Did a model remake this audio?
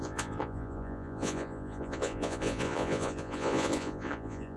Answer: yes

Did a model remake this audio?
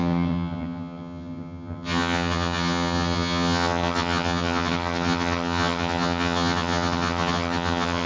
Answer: yes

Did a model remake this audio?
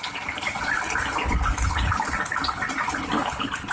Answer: no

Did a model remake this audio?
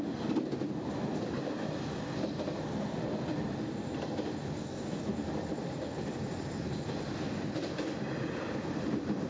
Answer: no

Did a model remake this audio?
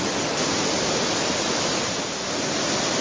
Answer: no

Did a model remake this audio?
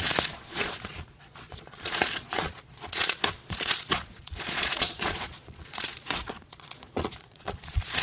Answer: yes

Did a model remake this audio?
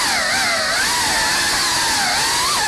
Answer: no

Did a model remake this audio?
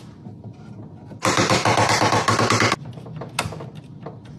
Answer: no